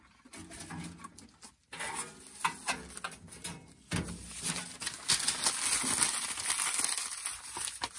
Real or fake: real